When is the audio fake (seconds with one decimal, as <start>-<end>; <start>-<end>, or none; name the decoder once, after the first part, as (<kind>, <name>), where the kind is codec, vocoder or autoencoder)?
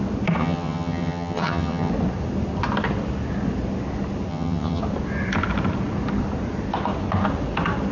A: 0.4-1.9 (vocoder, HiFi-GAN); 4.3-4.8